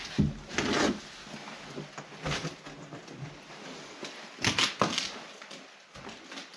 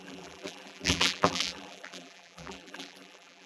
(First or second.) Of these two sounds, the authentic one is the first